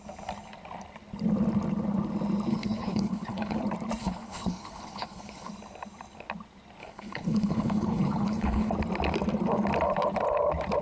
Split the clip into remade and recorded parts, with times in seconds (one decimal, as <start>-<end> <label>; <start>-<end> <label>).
0.0-2.5 recorded; 2.5-3.6 remade; 3.6-4.0 recorded; 4.0-5.5 remade; 5.5-6.8 recorded; 6.8-8.7 remade; 8.7-10.8 recorded

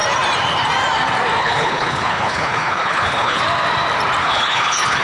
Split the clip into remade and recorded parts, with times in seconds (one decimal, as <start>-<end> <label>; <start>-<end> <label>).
0.0-1.4 recorded; 1.4-3.4 remade; 3.4-4.2 recorded; 4.2-5.0 remade

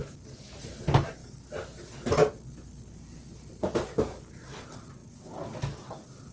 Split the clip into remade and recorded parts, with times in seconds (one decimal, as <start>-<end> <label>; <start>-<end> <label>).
0.0-6.3 recorded